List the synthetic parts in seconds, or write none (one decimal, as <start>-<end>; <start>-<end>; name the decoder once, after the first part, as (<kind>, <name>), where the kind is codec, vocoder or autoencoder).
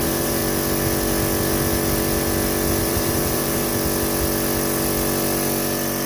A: 0.0-0.4 (vocoder, BigVGAN v2); 2.8-3.7